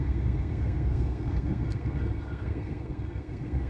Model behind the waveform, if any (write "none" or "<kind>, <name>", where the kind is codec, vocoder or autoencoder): codec, SNAC